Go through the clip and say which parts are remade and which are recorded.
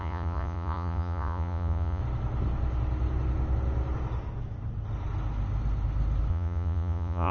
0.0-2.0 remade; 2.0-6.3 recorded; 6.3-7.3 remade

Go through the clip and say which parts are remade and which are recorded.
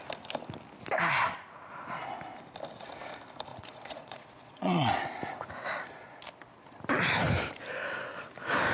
0.0-3.5 recorded; 3.5-4.9 remade; 4.9-5.7 recorded; 5.7-6.2 remade; 6.2-8.7 recorded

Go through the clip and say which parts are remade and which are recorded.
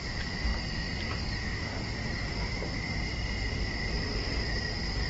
0.0-5.1 recorded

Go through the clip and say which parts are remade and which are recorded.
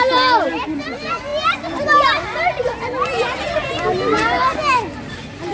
0.0-5.5 recorded